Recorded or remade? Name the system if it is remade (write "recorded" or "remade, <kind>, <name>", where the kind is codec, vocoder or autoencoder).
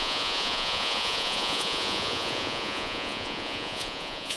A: remade, vocoder, Vocos